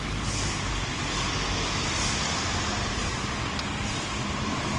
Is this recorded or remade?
recorded